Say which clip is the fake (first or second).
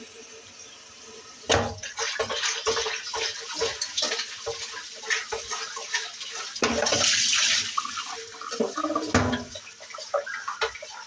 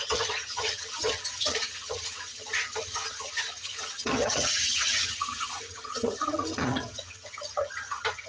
second